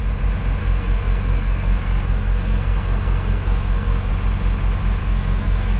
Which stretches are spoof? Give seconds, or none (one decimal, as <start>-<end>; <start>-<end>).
0.6-4.1; 5.0-5.8